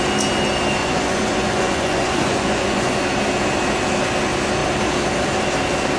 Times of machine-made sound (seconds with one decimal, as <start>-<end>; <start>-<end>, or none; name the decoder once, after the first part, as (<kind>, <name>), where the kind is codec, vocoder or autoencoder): 0.8-3.0 (vocoder, Vocos)